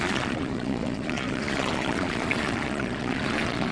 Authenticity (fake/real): fake